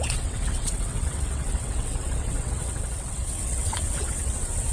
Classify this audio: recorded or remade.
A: remade